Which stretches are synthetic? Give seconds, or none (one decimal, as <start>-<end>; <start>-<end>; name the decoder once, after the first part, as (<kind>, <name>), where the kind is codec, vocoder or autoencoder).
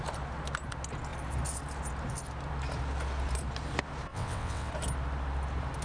4.1-4.7 (vocoder, WaveNeXt)